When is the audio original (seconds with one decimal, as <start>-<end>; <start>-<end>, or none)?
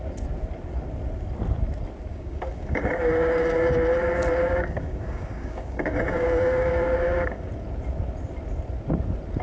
0.0-2.1; 3.7-4.4; 7.5-9.4